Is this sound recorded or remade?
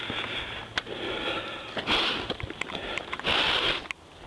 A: recorded